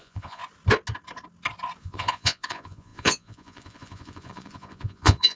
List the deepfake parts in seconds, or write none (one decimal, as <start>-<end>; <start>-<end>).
0.0-0.4; 1.8-5.3

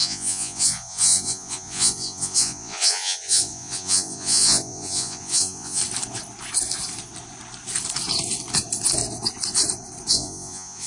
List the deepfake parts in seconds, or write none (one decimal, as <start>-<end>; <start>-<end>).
0.0-5.8; 10.1-10.9